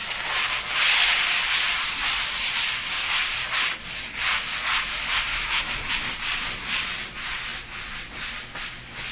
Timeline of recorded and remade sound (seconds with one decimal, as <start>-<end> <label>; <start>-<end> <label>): 0.0-5.3 recorded; 5.3-5.9 remade; 5.9-9.1 recorded